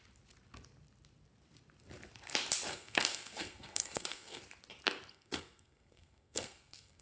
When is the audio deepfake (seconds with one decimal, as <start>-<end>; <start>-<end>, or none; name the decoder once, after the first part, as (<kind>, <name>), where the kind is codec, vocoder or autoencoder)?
2.7-4.4 (codec, SNAC); 5.1-7.0